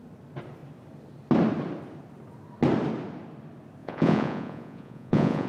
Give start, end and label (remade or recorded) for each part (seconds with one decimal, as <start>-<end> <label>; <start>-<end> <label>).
0.0-3.8 recorded; 3.8-5.5 remade